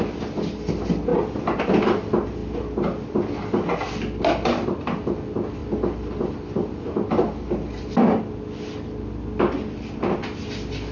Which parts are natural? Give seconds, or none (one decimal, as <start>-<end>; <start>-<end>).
1.1-1.6